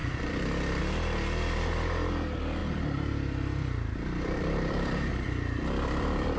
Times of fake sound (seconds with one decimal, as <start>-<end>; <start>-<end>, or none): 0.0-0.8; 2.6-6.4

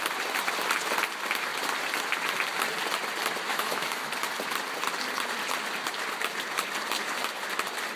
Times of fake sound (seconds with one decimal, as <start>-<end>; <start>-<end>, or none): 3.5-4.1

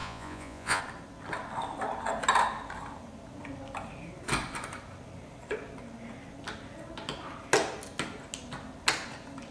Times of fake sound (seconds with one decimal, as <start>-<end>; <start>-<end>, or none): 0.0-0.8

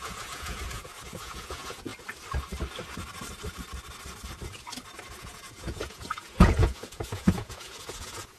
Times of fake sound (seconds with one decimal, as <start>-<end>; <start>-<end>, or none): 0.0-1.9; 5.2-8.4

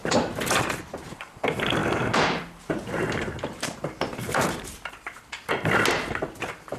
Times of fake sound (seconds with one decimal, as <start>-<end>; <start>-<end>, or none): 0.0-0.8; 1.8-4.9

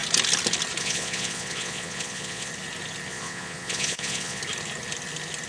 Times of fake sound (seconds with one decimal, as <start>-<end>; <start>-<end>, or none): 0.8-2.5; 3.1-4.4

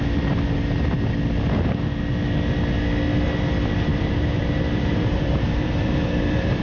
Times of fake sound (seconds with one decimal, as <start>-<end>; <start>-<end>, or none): 3.9-6.6

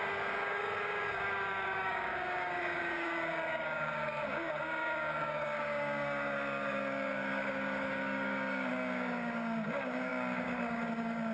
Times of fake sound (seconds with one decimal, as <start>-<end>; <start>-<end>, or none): 0.0-11.3